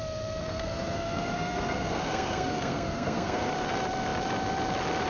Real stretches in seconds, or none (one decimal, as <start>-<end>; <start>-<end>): 0.0-0.4; 3.5-5.1